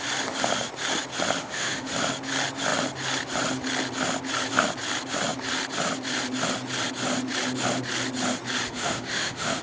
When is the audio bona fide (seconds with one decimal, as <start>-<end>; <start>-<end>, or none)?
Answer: 0.0-1.4; 1.9-8.7